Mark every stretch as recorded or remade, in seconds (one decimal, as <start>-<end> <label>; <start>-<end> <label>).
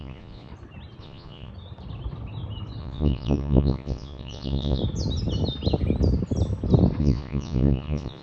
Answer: 0.0-0.5 remade; 0.5-1.0 recorded; 1.0-1.5 remade; 1.5-2.8 recorded; 2.8-4.8 remade; 4.8-7.0 recorded; 7.0-8.2 remade